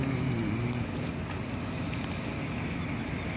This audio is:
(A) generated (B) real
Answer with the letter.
B